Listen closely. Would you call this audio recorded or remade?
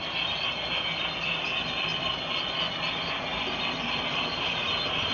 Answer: recorded